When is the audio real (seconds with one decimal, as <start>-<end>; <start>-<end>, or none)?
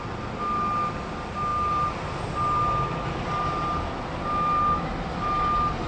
0.0-5.9